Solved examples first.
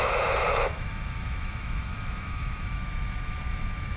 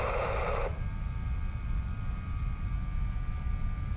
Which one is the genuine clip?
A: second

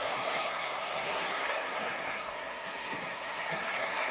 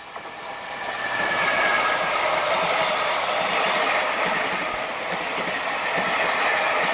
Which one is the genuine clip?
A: second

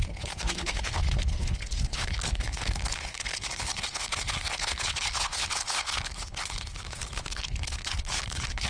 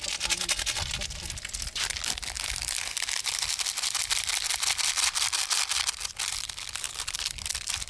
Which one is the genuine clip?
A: second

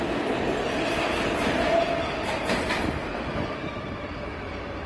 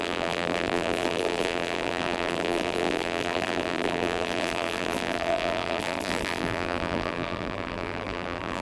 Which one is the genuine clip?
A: first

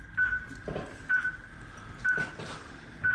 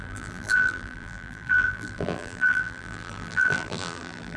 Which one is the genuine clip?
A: first